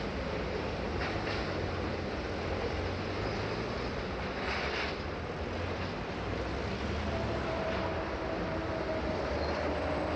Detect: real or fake real